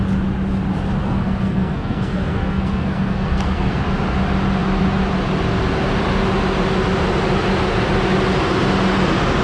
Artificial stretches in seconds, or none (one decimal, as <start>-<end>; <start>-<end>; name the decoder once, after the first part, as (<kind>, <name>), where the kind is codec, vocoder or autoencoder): 1.0-3.8 (codec, SNAC)